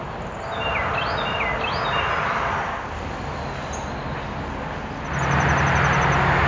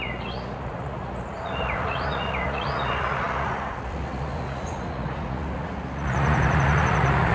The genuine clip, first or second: first